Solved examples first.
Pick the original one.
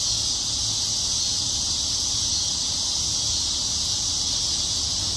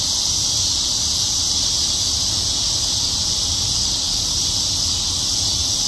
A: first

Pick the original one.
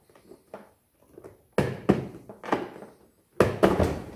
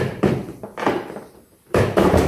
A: first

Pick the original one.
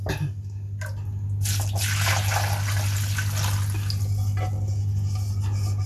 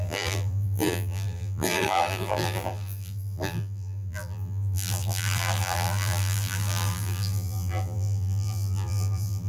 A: first